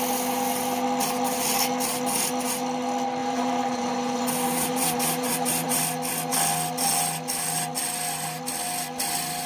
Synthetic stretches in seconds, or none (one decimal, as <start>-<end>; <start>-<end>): 3.2-5.8